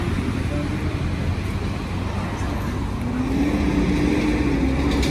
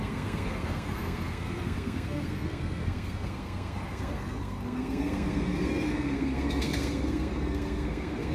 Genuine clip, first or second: first